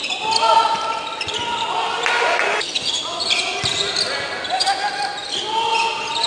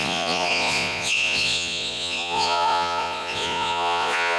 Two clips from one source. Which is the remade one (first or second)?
second